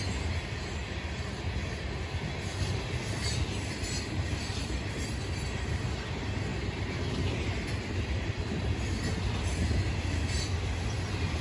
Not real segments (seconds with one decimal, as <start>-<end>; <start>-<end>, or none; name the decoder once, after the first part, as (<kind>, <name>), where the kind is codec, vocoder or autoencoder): none